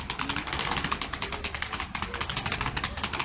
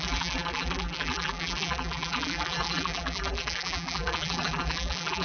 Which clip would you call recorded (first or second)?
first